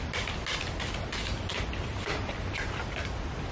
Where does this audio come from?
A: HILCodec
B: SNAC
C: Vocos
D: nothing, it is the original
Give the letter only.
D